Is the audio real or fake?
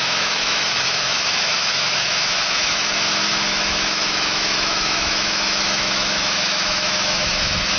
fake